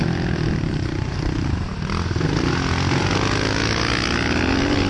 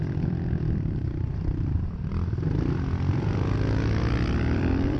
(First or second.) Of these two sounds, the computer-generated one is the second